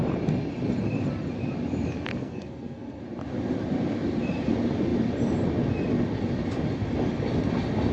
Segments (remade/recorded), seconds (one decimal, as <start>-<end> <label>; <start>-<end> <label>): 0.0-2.1 recorded; 2.1-3.0 remade; 3.0-7.9 recorded